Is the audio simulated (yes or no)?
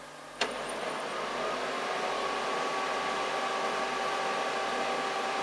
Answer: no